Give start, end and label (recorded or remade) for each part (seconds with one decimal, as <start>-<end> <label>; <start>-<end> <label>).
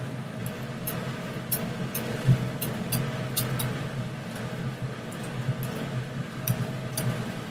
0.0-6.2 recorded; 6.2-7.5 remade